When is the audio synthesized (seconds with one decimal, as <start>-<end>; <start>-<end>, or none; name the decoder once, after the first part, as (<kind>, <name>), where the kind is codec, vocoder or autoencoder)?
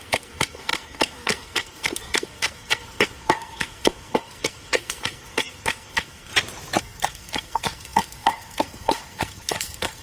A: 0.0-6.3 (codec, SNAC); 6.8-10.0